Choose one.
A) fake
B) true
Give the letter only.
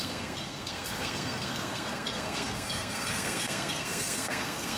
A